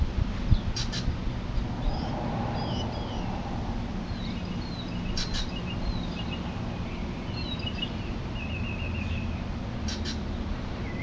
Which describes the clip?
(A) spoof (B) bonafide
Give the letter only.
B